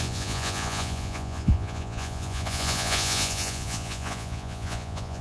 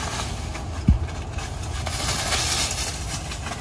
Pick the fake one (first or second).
first